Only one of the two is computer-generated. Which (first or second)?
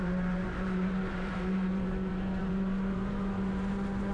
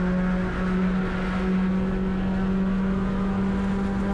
first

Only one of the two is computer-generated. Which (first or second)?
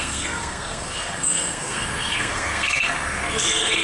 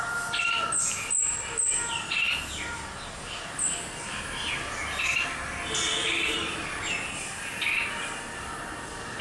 first